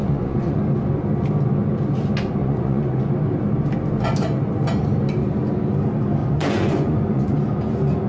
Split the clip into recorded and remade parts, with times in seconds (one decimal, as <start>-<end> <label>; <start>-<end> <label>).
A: 0.0-0.6 remade; 0.6-2.4 recorded; 2.4-3.1 remade; 3.1-6.2 recorded; 6.2-7.3 remade; 7.3-8.1 recorded